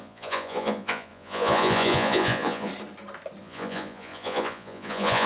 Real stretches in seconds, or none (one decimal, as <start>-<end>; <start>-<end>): 2.7-3.4

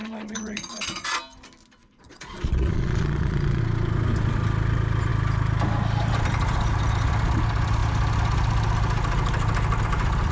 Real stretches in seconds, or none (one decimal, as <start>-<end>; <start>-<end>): 1.2-1.8; 3.6-10.3

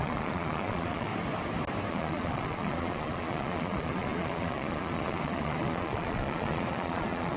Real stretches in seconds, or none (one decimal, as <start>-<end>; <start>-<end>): 1.1-1.9